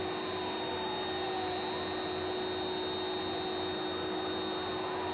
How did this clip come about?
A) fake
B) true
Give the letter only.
B